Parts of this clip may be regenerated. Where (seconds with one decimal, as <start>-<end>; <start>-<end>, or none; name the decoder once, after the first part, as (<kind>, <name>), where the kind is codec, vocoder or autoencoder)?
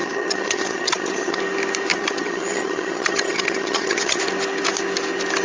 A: 0.0-1.4 (vocoder, HiFi-GAN); 1.9-4.2